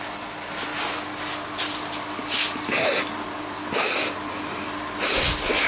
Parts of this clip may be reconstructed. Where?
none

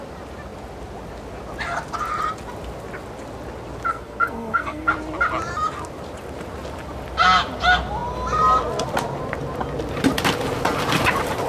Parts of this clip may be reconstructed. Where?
3.9-4.9 (codec, SNAC)

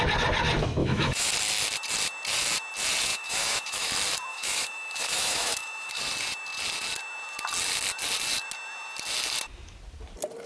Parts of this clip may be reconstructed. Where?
0.8-1.3 (autoencoder, DAC-VAE); 3.1-3.9; 4.3-6.0

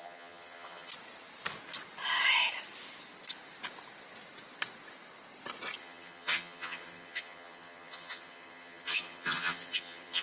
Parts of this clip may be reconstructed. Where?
0.0-0.9 (vocoder, HiFi-GAN); 5.8-10.2

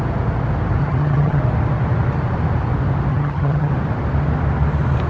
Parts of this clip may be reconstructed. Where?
0.8-1.4 (vocoder, HiFi-GAN); 3.1-3.7

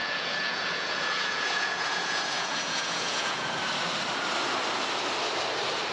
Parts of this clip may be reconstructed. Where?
0.0-3.5 (vocoder, Vocos)

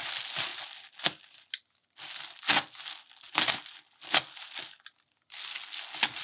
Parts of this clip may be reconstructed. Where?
none